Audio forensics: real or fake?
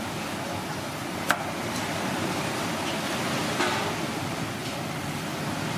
real